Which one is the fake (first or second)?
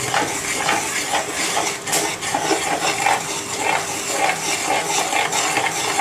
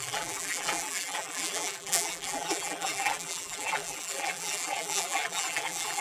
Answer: second